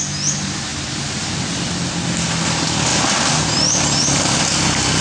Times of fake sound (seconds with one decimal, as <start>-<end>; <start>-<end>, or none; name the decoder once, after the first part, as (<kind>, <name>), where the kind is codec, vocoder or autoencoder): none